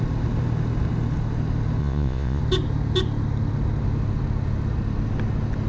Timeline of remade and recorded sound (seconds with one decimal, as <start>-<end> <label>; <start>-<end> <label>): 0.0-1.8 recorded; 1.8-2.4 remade; 2.4-5.7 recorded